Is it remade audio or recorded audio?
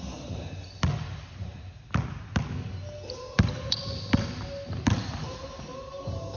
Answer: recorded